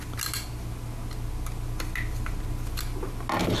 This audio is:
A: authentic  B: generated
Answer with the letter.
A